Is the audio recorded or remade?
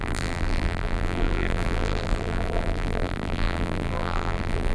remade